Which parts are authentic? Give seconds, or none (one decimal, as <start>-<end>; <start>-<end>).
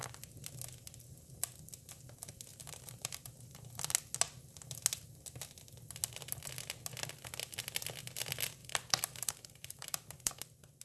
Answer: 0.0-2.5; 3.8-8.6; 10.3-10.8